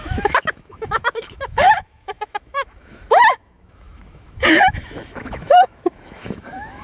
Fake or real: fake